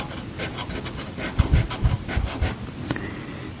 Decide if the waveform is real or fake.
real